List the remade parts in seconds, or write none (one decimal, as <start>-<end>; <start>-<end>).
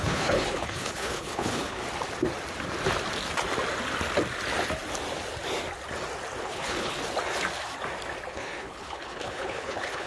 0.0-1.8; 6.4-7.0; 8.3-10.1